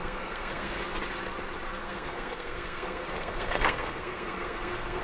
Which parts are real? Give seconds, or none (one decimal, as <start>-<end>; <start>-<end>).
0.8-1.8